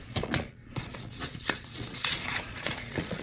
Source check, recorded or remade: remade